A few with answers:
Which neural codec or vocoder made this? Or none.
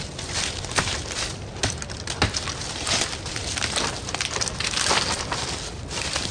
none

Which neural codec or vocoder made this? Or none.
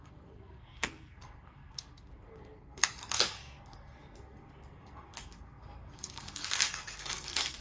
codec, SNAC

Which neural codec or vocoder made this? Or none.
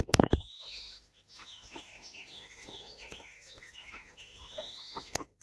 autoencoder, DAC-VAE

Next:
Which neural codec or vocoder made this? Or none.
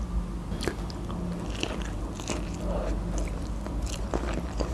none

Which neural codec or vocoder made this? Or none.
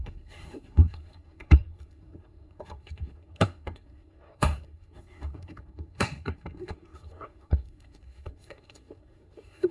codec, SNAC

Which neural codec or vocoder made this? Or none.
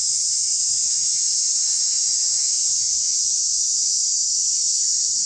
autoencoder, DAC-VAE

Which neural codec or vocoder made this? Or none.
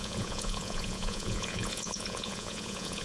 vocoder, Vocos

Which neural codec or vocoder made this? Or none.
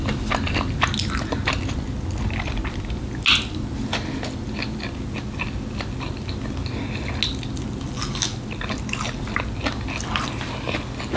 none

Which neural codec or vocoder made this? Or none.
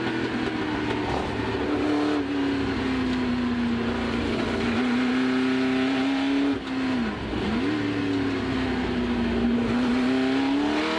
none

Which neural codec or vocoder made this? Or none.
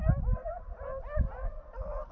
none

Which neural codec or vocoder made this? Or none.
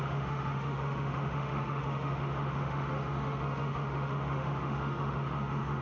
autoencoder, DAC-VAE